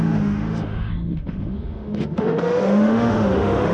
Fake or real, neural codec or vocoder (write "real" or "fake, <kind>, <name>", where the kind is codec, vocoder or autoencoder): fake, autoencoder, DAC-VAE